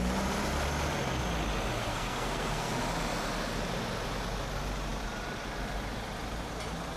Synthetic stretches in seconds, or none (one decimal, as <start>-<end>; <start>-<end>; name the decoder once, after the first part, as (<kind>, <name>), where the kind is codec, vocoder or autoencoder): 1.8-2.8 (codec, SNAC)